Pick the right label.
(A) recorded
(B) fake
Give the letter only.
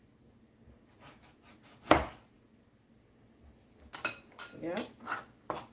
A